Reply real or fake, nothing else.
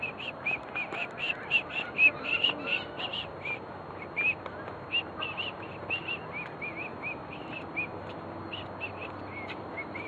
real